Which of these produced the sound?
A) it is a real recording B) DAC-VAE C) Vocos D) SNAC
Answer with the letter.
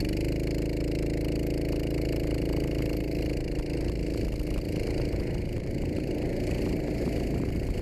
A